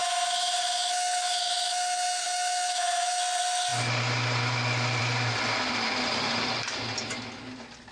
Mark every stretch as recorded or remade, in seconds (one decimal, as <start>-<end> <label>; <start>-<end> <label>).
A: 0.0-3.2 remade; 3.2-7.9 recorded